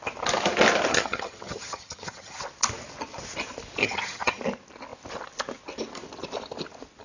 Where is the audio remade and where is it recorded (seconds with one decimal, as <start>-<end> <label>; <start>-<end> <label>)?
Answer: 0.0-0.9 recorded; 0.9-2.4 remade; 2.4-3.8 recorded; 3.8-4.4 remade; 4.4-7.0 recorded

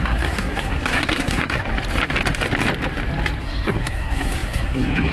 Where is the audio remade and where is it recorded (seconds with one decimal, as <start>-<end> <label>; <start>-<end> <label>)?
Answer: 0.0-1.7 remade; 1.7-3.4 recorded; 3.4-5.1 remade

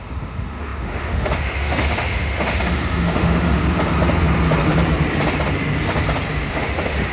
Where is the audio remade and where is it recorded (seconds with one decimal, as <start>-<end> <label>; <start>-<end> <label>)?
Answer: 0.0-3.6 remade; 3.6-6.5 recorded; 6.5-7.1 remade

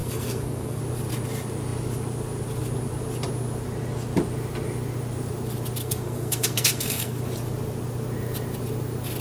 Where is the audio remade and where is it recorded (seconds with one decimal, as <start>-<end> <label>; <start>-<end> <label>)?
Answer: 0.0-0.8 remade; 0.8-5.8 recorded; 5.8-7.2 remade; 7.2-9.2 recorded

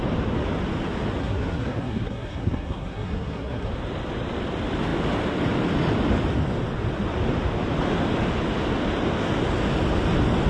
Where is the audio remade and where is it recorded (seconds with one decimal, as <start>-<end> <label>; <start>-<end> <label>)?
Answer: 0.0-1.2 recorded; 1.2-3.7 remade; 3.7-10.5 recorded

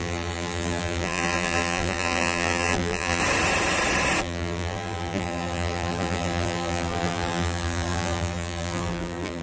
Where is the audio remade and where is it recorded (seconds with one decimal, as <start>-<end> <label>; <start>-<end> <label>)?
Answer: 0.0-3.2 remade; 3.2-4.2 recorded; 4.2-9.4 remade

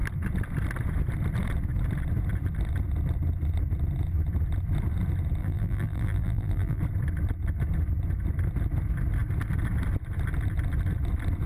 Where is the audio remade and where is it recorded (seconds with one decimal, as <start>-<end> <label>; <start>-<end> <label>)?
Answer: 0.0-5.4 recorded; 5.4-6.8 remade; 6.8-11.5 recorded

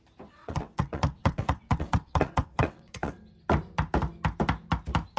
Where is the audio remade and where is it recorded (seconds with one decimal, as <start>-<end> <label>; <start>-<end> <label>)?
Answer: 0.0-0.4 recorded; 0.4-3.1 remade; 3.1-5.2 recorded